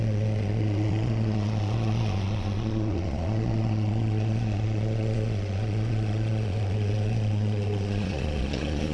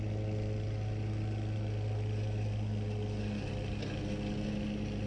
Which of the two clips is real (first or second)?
second